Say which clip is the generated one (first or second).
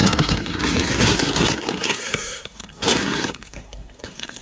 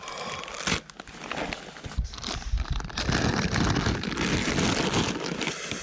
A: first